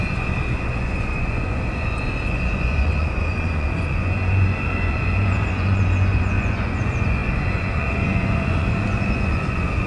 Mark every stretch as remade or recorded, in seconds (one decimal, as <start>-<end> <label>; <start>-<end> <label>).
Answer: 0.0-9.9 remade